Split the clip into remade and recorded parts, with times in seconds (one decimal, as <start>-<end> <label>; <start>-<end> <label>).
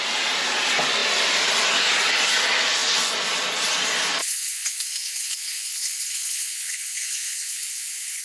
0.0-4.2 recorded; 4.2-8.2 remade